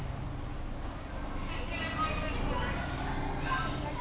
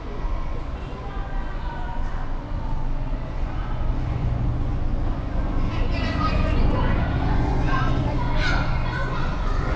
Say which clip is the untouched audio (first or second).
first